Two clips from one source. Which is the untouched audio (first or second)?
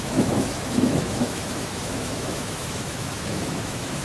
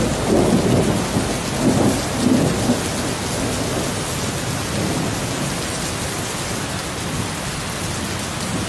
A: second